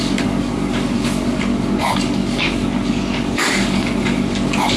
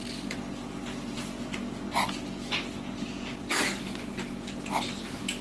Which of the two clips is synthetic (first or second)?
first